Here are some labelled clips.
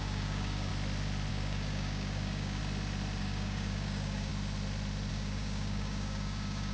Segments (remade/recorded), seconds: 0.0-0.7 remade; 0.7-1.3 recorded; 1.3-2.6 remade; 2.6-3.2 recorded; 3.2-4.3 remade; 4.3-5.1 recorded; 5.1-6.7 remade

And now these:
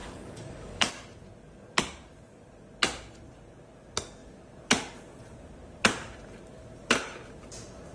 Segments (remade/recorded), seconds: 0.0-0.9 remade; 0.9-7.9 recorded

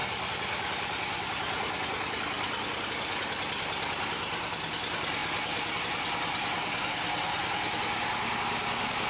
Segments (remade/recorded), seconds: 0.0-9.1 recorded

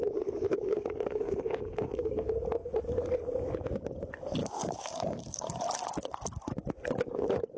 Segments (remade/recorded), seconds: 0.0-0.5 recorded; 0.5-2.3 remade; 2.3-4.4 recorded; 4.4-5.5 remade; 5.5-7.6 recorded

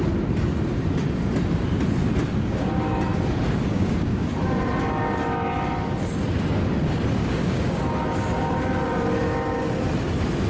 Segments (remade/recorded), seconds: 0.0-3.7 recorded; 3.7-4.3 remade; 4.3-7.2 recorded; 7.2-7.8 remade; 7.8-10.5 recorded

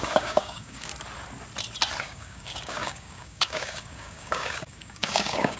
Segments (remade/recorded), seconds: 0.0-0.9 remade; 0.9-2.0 recorded; 2.0-5.6 remade